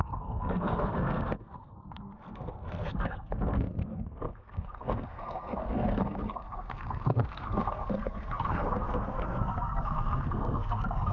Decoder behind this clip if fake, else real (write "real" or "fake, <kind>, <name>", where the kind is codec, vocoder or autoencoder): fake, codec, SNAC